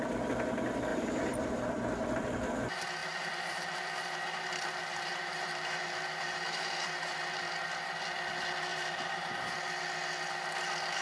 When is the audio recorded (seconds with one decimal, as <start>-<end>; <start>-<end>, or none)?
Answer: 0.0-0.9; 2.1-3.0; 7.5-8.7; 9.5-11.0